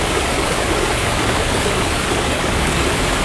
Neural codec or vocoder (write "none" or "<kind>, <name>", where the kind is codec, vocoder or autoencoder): codec, DAC